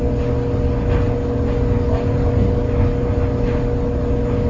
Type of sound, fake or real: real